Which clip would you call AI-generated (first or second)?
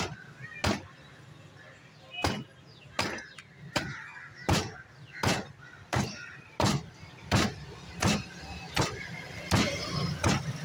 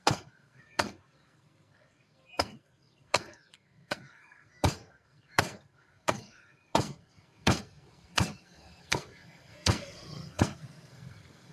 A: second